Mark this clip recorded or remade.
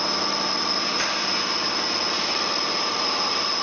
recorded